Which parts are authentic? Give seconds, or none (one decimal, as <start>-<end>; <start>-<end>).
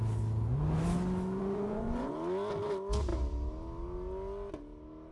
0.0-1.4; 2.1-5.1